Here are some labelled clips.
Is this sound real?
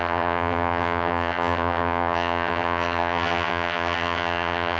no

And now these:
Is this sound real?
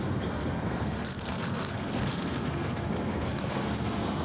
no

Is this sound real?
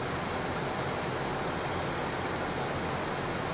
yes